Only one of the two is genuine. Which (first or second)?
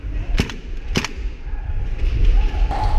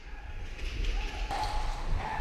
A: second